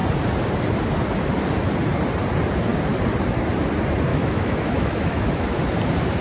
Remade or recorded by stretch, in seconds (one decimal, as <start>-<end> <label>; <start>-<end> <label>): 0.0-4.1 recorded; 4.1-5.6 remade; 5.6-6.2 recorded